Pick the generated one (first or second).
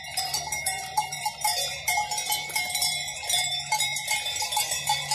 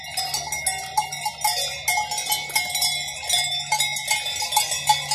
first